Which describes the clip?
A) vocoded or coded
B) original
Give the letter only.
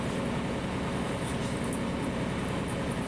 B